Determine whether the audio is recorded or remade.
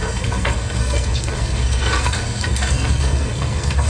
remade